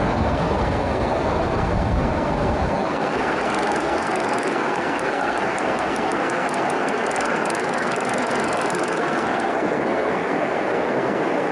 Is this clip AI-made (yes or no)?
yes